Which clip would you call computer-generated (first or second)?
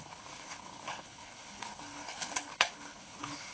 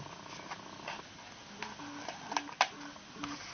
first